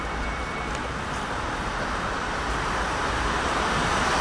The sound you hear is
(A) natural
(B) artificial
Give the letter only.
A